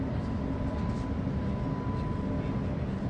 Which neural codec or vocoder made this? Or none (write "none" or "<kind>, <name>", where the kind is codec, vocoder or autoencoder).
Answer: none